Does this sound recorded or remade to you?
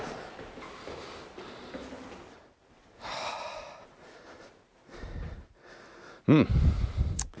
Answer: recorded